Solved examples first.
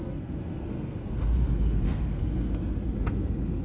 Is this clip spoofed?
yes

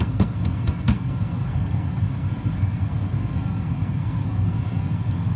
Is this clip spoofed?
yes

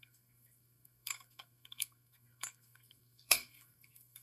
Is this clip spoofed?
yes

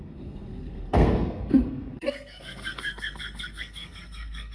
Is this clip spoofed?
yes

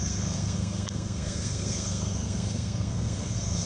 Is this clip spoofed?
yes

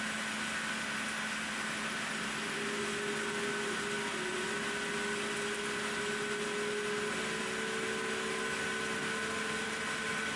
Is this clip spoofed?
no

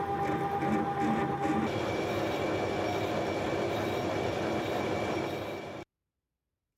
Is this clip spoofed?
no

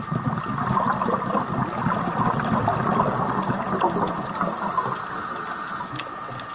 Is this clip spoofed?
no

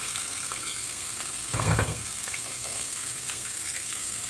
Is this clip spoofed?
yes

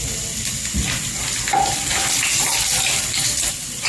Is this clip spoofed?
no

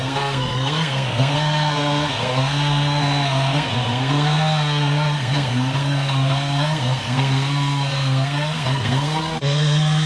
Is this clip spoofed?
yes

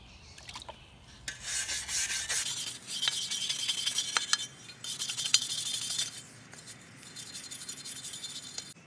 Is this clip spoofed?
no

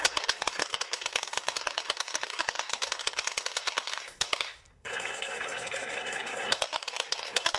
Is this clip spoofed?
yes